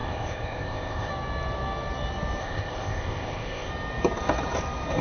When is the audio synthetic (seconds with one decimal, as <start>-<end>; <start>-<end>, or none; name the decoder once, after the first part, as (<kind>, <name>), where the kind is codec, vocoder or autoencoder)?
0.0-1.1 (codec, ZipCodec); 2.4-3.7